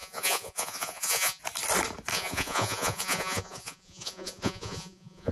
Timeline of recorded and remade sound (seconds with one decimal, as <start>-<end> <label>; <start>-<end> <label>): 0.0-1.4 remade; 1.4-2.1 recorded; 2.1-5.3 remade

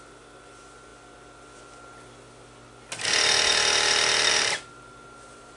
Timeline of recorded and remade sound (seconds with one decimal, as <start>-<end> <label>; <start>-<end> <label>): 0.0-5.6 recorded

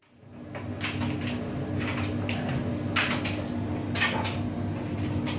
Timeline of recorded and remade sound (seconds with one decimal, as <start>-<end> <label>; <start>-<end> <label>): 0.0-5.4 recorded

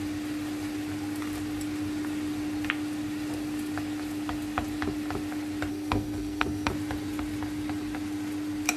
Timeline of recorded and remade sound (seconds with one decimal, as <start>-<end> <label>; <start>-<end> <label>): 0.0-5.7 recorded; 5.7-6.7 remade; 6.7-8.8 recorded

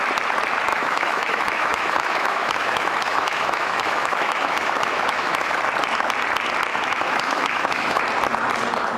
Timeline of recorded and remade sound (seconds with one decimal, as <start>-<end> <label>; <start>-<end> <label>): 0.0-0.7 recorded; 0.7-5.6 remade; 5.6-6.7 recorded; 6.7-8.0 remade; 8.0-9.0 recorded

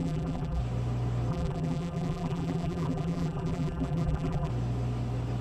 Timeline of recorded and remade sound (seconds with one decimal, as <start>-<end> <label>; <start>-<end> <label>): 0.0-0.6 remade; 0.6-1.3 recorded; 1.3-4.5 remade; 4.5-5.4 recorded

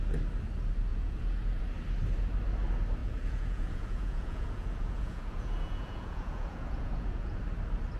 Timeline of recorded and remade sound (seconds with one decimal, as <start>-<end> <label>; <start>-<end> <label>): 0.0-0.9 recorded; 0.9-1.6 remade; 1.6-3.0 recorded; 3.0-7.4 remade; 7.4-8.0 recorded

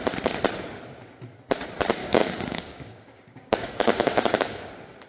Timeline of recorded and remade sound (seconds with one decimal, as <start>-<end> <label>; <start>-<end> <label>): 0.0-2.0 recorded; 2.0-4.6 remade; 4.6-5.1 recorded